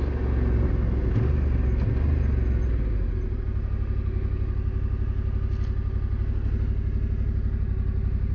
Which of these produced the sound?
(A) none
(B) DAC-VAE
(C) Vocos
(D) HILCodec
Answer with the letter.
A